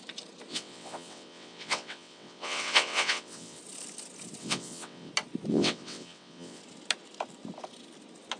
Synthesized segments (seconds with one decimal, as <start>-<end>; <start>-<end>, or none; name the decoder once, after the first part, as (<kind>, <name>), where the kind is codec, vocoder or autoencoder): 0.5-3.6 (vocoder, WaveNeXt); 4.4-5.1; 5.5-6.6